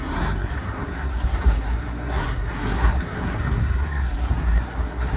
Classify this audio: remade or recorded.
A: remade